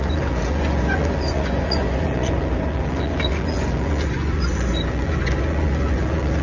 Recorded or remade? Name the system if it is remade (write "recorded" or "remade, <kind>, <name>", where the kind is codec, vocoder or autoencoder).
remade, vocoder, Vocos